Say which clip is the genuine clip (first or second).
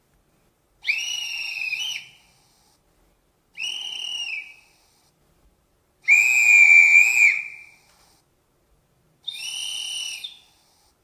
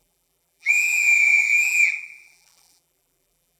first